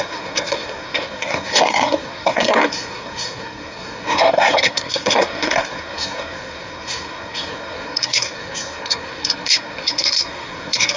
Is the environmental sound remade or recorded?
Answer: remade